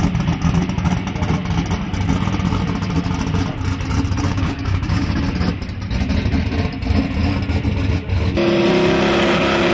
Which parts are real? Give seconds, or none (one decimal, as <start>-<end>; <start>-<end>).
0.0-4.3; 5.2-9.7